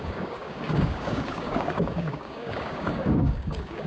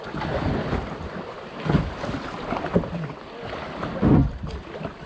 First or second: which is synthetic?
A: first